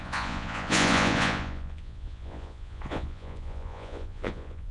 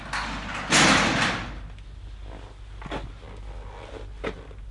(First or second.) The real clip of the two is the second